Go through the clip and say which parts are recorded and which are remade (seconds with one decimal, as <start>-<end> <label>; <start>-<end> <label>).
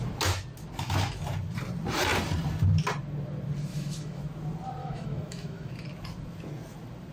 0.0-3.7 recorded; 3.7-4.2 remade; 4.2-4.8 recorded; 4.8-5.7 remade; 5.7-7.1 recorded